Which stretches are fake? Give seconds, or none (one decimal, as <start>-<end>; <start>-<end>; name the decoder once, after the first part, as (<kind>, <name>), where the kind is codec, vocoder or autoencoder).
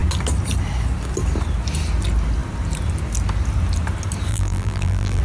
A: 4.3-5.2 (vocoder, BigVGAN v2)